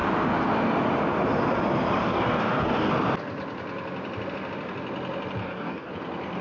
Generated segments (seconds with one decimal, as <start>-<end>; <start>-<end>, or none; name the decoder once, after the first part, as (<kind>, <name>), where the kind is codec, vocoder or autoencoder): 2.0-2.9 (codec, DAC); 5.4-5.9